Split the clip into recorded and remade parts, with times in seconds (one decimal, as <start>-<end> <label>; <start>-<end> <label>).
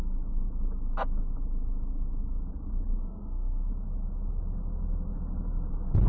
0.0-3.0 recorded; 3.0-3.7 remade; 3.7-6.1 recorded